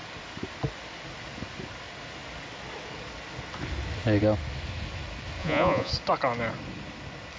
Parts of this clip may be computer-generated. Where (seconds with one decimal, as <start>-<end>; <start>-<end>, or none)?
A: 5.4-5.9